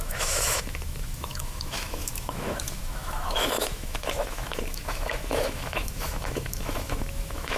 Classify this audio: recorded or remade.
remade